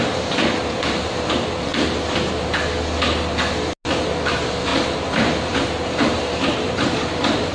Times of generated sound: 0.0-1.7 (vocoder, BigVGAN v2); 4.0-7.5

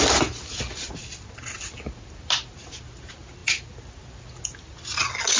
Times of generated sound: none

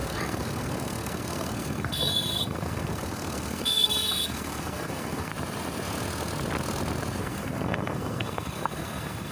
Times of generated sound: 0.0-5.3 (codec, SNAC); 7.2-9.3

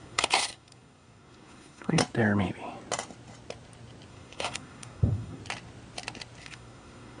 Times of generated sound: 0.0-2.0 (codec, SNAC); 4.1-5.4; 6.4-7.2

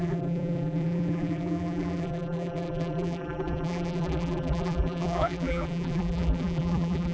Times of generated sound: 0.0-7.1 (vocoder, BigVGAN v2)

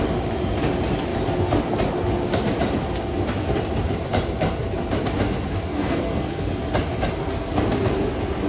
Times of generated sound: 5.7-6.5 (codec, SNAC)

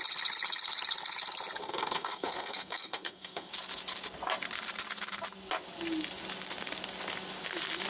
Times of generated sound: 1.6-3.5 (codec, SNAC)